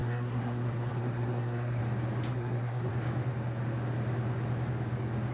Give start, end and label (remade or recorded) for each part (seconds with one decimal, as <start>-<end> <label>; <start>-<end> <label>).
0.0-1.8 remade; 1.8-2.3 recorded; 2.3-2.9 remade; 2.9-5.3 recorded